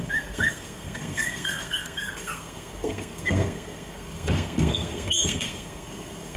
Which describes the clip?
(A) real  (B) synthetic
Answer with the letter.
B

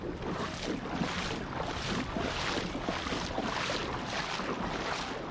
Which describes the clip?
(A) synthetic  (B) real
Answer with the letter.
B